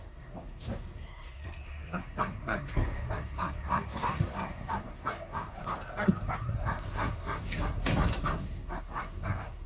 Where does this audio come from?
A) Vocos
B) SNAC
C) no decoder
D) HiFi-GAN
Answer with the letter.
B